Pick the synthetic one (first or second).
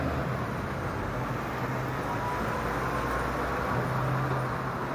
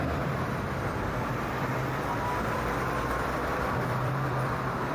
second